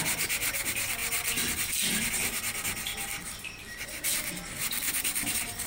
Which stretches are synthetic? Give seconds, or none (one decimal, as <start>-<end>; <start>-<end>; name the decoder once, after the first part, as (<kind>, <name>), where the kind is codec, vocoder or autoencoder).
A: none